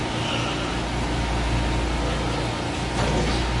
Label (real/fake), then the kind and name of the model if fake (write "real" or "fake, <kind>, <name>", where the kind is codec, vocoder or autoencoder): real